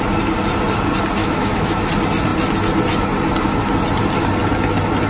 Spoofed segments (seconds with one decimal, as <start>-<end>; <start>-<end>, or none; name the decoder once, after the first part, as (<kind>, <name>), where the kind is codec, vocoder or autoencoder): 1.2-1.9 (autoencoder, DAC-VAE)